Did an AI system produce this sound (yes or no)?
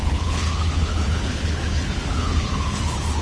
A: yes